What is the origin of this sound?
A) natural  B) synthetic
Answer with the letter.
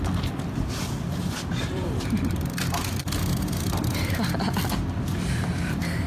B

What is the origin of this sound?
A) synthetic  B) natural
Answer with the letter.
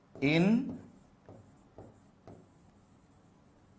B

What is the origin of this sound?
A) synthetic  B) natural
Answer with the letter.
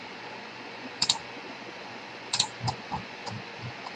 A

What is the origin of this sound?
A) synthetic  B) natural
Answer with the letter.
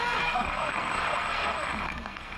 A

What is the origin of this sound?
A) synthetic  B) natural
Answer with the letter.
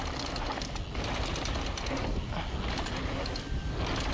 B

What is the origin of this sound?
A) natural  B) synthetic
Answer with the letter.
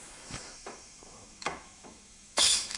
B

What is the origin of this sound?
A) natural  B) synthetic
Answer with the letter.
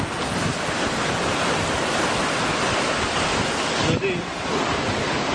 A